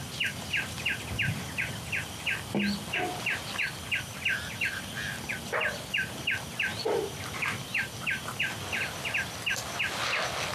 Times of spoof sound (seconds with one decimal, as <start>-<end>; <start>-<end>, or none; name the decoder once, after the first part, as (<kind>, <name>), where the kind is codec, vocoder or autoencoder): 6.7-7.4 (vocoder, BigVGAN v2)